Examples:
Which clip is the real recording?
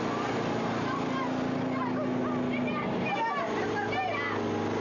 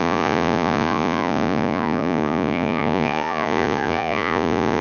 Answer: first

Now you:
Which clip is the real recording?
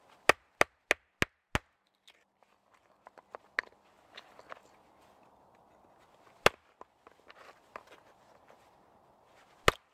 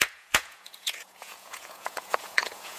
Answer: first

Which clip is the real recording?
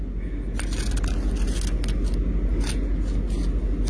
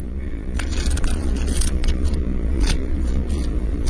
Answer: first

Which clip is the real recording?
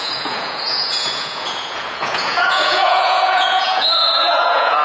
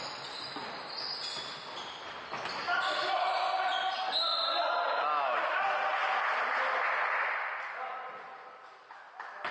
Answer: second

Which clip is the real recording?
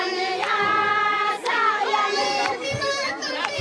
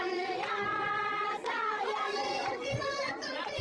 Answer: first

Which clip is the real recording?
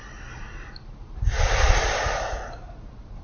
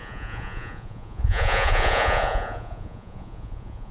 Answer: first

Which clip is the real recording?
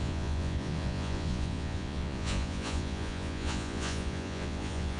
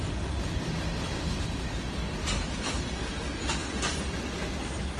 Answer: second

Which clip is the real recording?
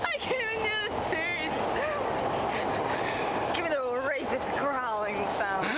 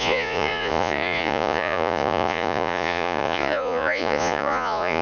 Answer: first